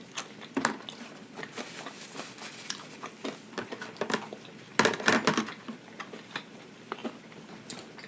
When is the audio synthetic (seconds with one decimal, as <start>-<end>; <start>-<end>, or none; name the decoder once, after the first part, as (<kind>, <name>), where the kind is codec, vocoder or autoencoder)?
none

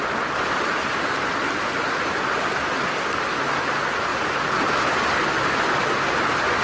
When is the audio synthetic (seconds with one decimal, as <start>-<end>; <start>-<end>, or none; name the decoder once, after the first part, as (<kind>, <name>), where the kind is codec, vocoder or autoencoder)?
4.1-6.6 (vocoder, BigVGAN v2)

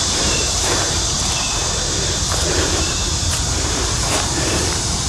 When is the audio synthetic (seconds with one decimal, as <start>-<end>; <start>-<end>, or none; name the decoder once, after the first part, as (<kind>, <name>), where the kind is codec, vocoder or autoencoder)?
0.0-1.6 (vocoder, BigVGAN v2); 2.4-5.1

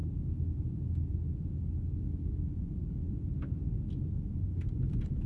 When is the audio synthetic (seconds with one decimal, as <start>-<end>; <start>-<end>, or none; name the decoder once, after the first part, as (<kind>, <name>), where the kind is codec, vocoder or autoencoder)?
4.4-5.3 (vocoder, BigVGAN v2)

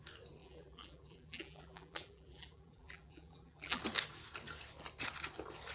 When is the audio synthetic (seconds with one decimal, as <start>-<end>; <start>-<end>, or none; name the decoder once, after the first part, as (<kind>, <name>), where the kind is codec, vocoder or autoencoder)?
0.4-3.8 (vocoder, BigVGAN v2)

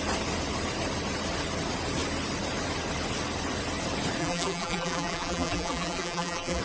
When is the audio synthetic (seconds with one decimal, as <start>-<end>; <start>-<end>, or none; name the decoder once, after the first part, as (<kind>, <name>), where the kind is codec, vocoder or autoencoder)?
4.2-6.6 (vocoder, BigVGAN v2)